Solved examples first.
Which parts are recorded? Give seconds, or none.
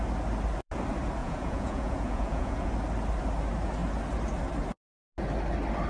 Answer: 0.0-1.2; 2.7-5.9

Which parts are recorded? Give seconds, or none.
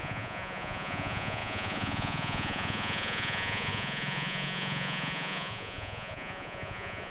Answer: none